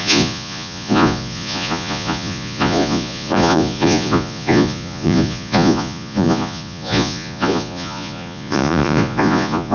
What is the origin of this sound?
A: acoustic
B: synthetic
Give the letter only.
B